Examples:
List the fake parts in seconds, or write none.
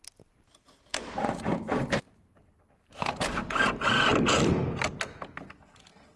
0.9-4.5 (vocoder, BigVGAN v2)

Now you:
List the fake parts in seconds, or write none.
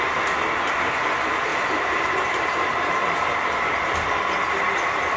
1.5-3.6 (vocoder, BigVGAN v2)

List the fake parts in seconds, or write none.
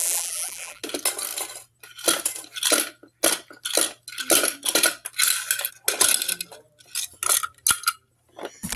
0.0-0.8 (vocoder, BigVGAN v2)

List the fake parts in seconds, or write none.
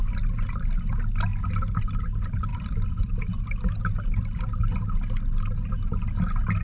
2.5-3.2 (vocoder, BigVGAN v2)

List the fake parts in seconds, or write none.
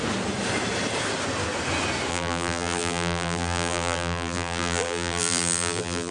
2.1-6.1 (vocoder, BigVGAN v2)